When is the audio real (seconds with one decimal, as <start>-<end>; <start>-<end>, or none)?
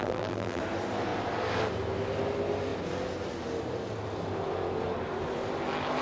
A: 0.6-6.0